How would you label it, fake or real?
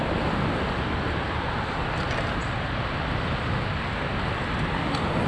real